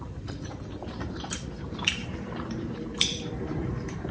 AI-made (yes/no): yes